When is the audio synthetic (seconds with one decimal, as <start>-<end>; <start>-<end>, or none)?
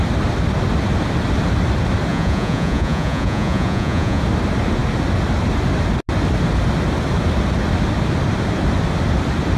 2.1-4.2